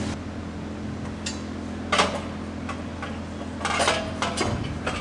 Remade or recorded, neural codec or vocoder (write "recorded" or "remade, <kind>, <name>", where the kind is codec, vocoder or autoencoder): recorded